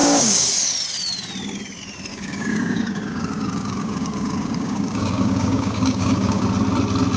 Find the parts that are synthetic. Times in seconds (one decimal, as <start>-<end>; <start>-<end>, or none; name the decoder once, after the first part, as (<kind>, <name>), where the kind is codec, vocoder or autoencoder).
0.0-0.5 (codec, DAC); 2.1-6.4